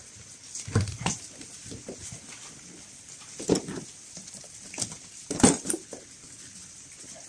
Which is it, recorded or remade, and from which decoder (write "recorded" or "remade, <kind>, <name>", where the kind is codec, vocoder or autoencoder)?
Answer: recorded